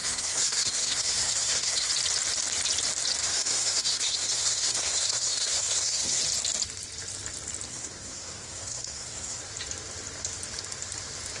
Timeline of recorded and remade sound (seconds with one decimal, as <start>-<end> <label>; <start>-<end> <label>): 0.0-1.9 remade; 1.9-3.2 recorded; 3.2-6.2 remade; 6.2-7.7 recorded; 7.7-9.4 remade; 9.4-11.4 recorded